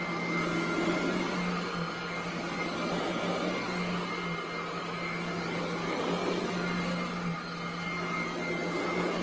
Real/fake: real